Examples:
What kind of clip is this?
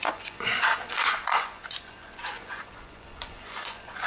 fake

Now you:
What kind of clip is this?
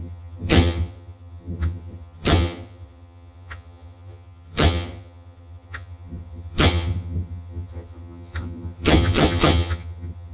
fake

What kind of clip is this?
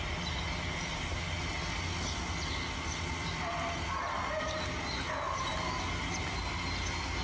real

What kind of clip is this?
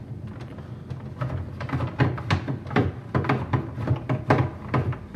real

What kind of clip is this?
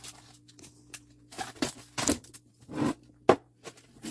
real